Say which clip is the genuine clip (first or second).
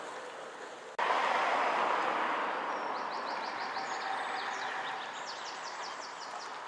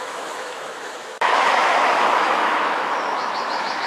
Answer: first